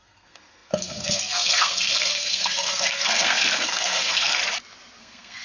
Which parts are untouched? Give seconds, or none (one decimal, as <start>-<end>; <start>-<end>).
4.4-5.0